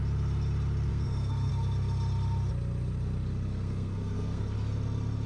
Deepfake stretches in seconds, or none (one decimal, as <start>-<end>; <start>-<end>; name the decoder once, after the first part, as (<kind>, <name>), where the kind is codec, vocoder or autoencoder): 0.9-1.5 (codec, SNAC); 3.5-4.4